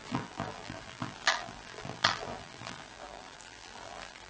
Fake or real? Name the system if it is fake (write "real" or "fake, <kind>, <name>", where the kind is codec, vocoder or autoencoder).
fake, vocoder, BigVGAN v2